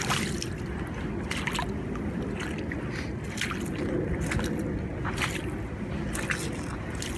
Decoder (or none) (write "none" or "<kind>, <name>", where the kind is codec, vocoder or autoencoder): none